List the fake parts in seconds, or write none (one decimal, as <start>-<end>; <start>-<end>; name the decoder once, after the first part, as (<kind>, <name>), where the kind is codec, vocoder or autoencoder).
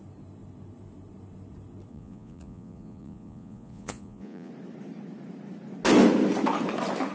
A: 1.9-4.5 (vocoder, Vocos)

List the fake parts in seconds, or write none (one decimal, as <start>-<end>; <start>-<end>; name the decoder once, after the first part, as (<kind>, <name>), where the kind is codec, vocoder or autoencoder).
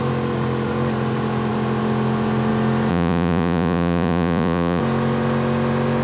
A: 2.9-4.8 (vocoder, Vocos)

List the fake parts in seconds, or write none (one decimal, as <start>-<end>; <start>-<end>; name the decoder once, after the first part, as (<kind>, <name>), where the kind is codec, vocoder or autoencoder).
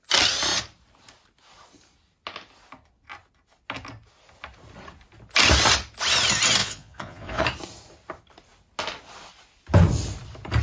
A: 6.6-7.4 (vocoder, Vocos)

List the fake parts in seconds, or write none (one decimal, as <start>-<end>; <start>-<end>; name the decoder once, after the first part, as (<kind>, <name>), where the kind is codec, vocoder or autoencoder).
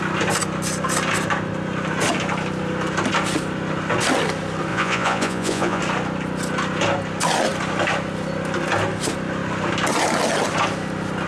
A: 4.7-5.8 (vocoder, Vocos)